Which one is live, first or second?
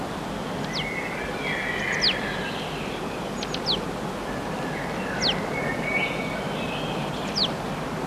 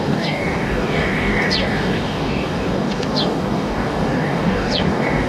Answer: first